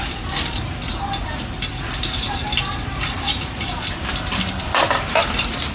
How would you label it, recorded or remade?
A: recorded